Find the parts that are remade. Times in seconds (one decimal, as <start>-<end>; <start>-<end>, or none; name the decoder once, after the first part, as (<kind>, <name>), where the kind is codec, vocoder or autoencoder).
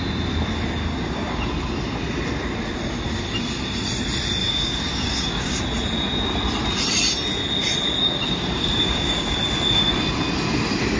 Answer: 0.8-1.5 (codec, DAC); 4.4-5.6; 8.0-9.4